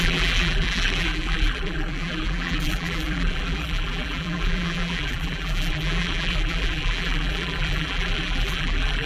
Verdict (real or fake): fake